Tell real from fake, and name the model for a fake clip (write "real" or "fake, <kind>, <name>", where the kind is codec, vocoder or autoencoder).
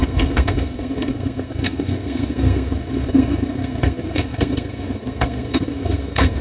fake, codec, SNAC